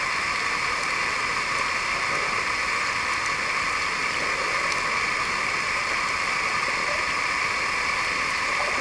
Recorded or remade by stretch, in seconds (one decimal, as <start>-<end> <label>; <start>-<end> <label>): 0.0-8.8 recorded